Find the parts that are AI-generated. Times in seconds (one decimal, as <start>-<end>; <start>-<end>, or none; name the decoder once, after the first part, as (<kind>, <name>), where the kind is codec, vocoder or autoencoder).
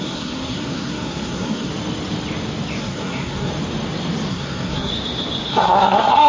0.0-1.7 (codec, SNAC); 2.8-3.5; 4.3-4.9; 5.5-6.3